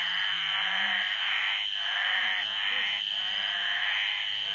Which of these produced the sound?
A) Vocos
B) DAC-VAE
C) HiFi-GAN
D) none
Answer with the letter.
D